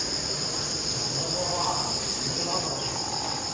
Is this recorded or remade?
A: recorded